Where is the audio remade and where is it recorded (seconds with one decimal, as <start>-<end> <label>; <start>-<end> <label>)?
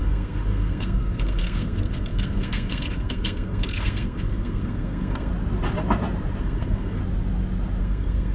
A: 0.0-5.3 remade; 5.3-6.4 recorded; 6.4-7.0 remade; 7.0-7.8 recorded; 7.8-8.3 remade